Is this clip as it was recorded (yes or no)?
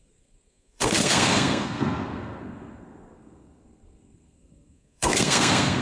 no